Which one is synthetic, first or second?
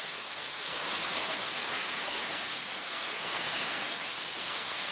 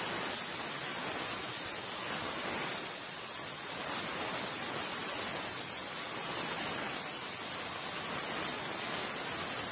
first